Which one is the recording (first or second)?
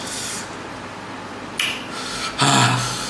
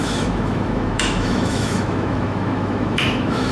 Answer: first